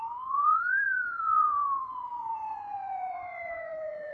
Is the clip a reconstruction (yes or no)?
yes